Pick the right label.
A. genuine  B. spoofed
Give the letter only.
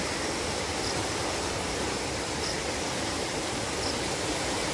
A